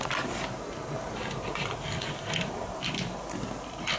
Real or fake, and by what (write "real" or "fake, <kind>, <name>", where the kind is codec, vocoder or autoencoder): real